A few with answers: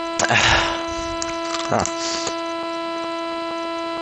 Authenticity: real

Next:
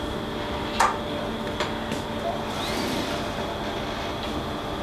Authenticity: real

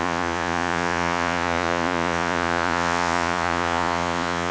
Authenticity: fake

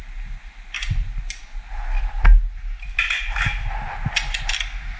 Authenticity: real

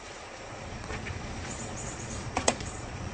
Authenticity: fake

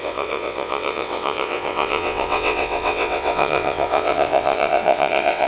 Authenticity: fake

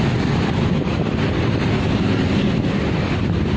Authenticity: real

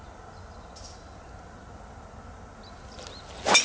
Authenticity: real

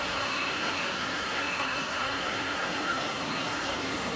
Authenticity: fake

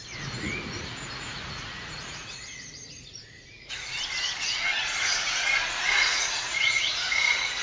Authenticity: fake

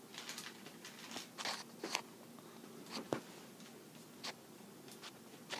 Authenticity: real